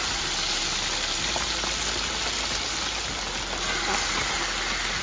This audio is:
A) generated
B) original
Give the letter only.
B